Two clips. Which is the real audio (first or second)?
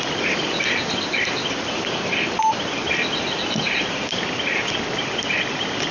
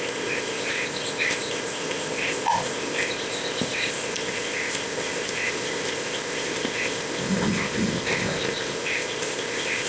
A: first